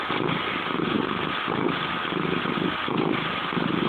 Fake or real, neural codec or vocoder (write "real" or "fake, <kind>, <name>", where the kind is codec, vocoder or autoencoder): real